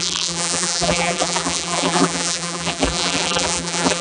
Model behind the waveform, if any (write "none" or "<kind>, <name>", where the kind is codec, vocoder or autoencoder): vocoder, BigVGAN v2